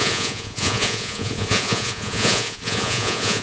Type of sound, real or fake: fake